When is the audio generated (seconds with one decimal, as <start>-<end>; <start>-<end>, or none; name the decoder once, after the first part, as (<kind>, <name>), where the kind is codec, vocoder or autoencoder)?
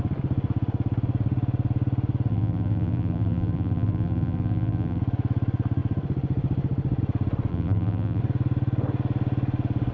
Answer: 2.3-5.0 (vocoder, BigVGAN v2); 7.5-8.2